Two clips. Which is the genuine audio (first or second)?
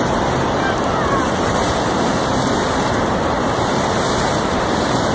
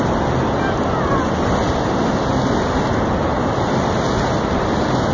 second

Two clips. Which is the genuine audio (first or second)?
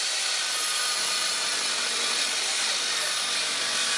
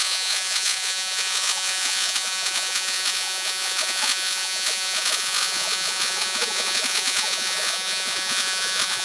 first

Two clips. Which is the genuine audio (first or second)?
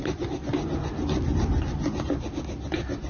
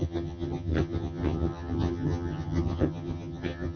first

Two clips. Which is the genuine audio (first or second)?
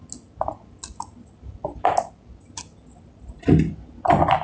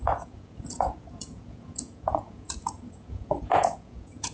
first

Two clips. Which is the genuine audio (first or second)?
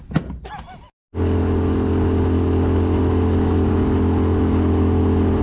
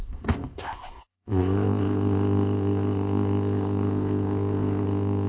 first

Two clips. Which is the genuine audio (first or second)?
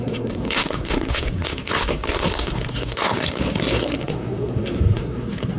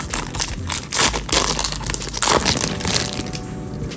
second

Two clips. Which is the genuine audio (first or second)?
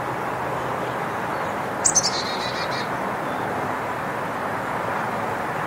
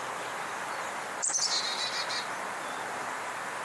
first